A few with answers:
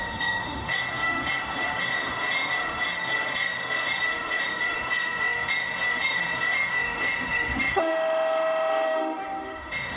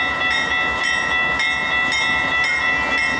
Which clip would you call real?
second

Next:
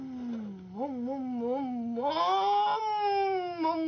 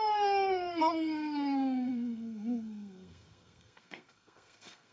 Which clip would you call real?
first